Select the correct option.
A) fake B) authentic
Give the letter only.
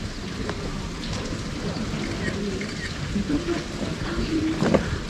B